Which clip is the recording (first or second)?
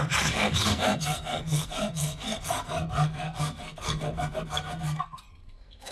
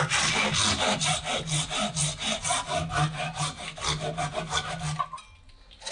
second